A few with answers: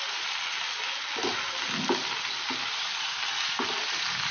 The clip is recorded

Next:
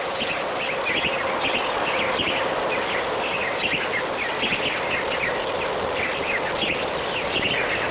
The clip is recorded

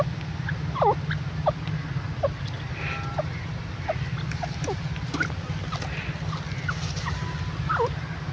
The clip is recorded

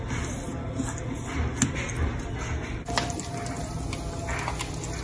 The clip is recorded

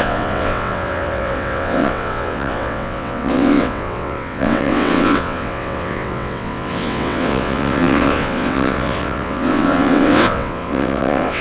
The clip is remade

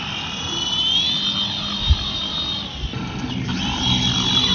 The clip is recorded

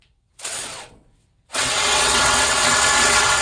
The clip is remade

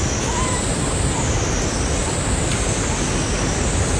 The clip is recorded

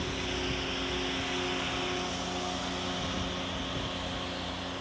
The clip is recorded